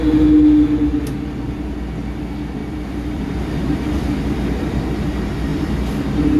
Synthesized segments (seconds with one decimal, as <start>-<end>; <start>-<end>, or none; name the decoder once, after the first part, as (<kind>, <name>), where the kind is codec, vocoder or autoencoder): 2.6-4.8 (vocoder, BigVGAN v2); 5.5-6.4